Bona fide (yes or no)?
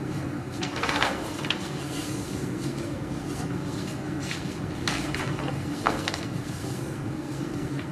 no